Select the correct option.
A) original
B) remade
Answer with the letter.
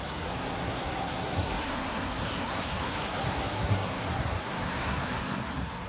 B